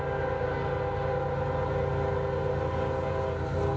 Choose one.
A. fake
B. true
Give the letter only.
B